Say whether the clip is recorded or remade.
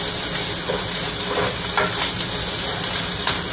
recorded